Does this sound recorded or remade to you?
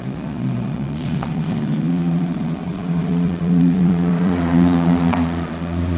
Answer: remade